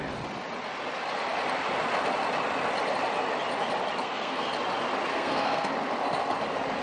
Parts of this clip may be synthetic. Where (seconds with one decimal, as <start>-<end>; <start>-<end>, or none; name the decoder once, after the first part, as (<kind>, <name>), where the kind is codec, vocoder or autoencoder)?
4.0-4.5 (codec, SNAC); 5.1-5.7